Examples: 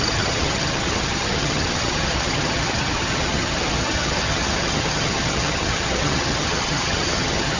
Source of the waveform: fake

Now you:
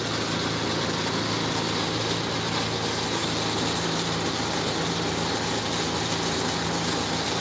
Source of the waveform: real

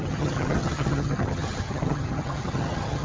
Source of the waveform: fake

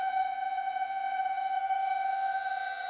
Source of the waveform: fake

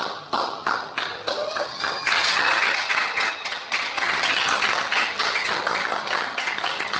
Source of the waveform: fake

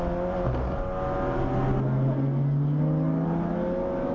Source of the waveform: real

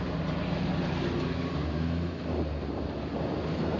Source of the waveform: real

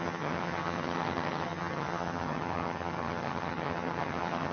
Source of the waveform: fake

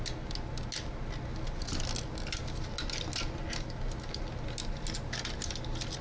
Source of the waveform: real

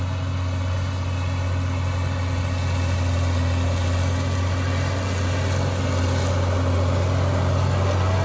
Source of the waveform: real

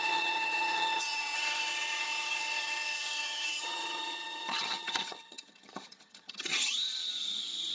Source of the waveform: fake